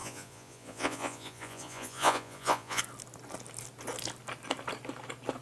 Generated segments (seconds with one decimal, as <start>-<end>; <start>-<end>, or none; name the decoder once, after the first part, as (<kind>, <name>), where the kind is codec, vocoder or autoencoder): 0.0-2.8 (vocoder, Vocos)